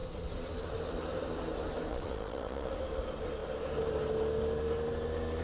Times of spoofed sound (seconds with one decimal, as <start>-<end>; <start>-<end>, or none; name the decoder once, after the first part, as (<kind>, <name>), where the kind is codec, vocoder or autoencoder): 1.9-2.7 (vocoder, Vocos)